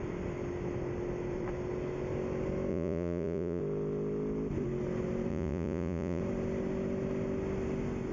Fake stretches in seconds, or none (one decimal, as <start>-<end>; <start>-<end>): 2.7-3.6; 5.3-6.2